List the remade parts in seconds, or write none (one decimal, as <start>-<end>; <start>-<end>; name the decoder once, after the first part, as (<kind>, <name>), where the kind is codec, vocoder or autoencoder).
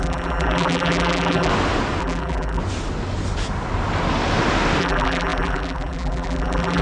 0.0-1.5 (vocoder, BigVGAN v2); 2.0-2.6; 4.8-6.8